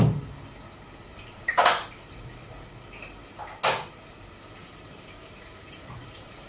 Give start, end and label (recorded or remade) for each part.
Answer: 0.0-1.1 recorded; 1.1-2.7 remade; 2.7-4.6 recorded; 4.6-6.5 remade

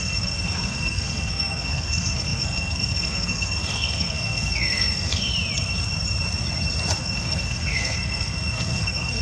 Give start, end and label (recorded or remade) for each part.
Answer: 0.0-5.3 remade; 5.3-7.0 recorded; 7.0-9.2 remade